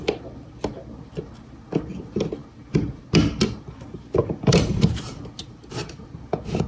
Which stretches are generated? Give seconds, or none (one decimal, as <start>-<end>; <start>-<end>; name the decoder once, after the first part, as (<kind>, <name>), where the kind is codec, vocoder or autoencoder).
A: 4.2-6.1 (vocoder, BigVGAN v2)